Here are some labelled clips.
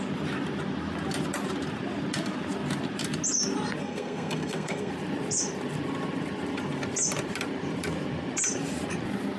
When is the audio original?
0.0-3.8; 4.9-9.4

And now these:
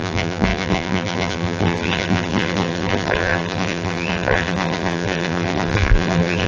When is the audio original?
none

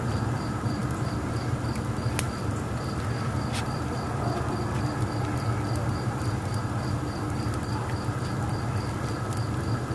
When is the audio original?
0.0-9.9

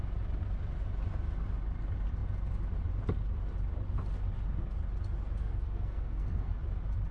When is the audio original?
0.0-5.4; 6.5-7.1

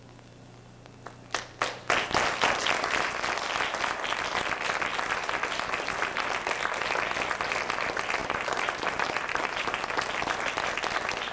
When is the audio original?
0.0-8.2; 9.9-11.3